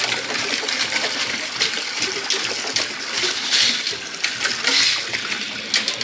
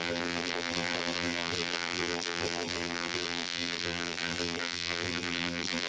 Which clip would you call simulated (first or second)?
second